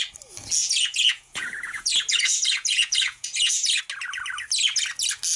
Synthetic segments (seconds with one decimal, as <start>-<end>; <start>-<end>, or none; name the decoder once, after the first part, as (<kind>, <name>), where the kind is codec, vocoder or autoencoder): 0.6-3.8 (vocoder, Vocos)